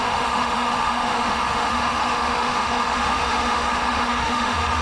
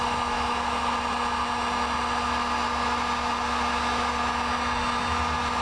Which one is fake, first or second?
first